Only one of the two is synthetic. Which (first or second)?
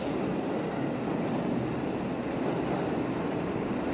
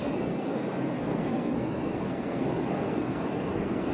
second